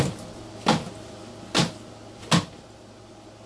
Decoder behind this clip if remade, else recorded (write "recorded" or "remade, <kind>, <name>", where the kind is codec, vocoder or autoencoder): recorded